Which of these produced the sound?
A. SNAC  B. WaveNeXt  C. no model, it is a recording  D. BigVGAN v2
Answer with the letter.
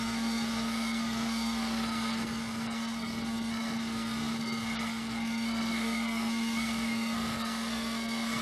A